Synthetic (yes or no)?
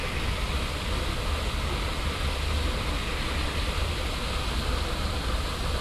no